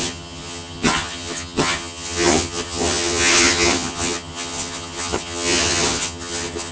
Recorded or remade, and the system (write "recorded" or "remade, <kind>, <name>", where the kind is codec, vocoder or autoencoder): remade, vocoder, HiFi-GAN